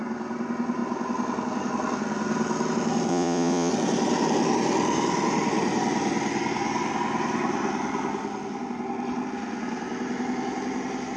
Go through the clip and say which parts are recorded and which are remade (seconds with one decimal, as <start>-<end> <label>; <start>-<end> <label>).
0.0-3.1 recorded; 3.1-3.7 remade; 3.7-11.2 recorded